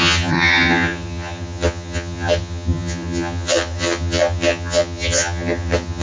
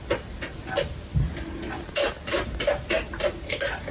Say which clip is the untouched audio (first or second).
second